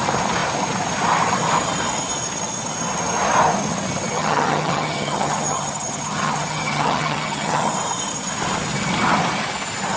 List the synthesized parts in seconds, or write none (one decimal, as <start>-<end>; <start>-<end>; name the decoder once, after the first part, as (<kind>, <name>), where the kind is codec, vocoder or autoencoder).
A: 4.1-7.7 (vocoder, HiFi-GAN)